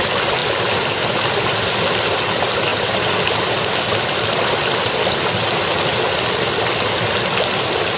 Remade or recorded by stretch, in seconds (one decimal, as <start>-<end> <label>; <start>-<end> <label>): 0.0-8.0 recorded